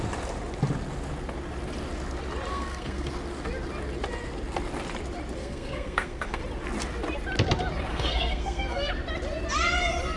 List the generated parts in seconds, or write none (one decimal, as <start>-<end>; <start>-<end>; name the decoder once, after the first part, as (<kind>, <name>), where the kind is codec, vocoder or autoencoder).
2.5-3.1 (codec, SNAC); 5.4-6.4; 7.9-8.9